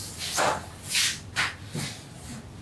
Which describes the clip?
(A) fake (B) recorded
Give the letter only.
B